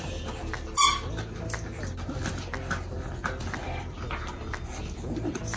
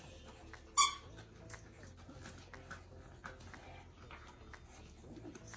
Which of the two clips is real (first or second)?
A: second